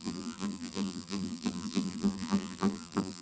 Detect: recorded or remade remade